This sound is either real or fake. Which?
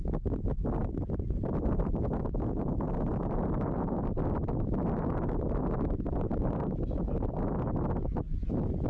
real